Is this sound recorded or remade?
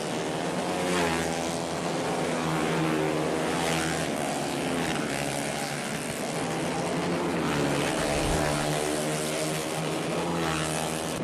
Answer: recorded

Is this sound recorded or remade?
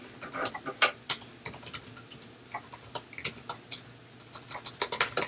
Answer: recorded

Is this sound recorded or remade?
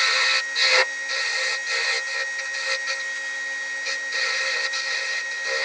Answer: recorded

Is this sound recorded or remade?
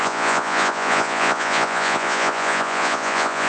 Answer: remade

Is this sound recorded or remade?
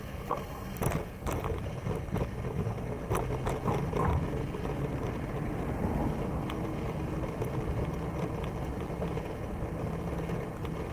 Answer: recorded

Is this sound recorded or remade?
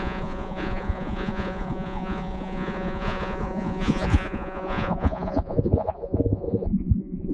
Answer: remade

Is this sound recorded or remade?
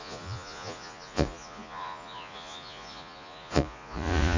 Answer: remade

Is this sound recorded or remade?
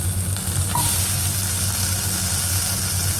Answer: recorded